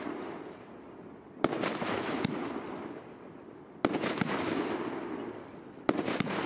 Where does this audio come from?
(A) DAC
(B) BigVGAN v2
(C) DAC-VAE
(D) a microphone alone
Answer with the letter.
D